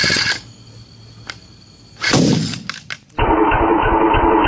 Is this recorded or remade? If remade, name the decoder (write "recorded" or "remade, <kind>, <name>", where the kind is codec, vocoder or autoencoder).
recorded